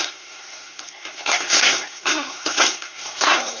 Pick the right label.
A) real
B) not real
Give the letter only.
B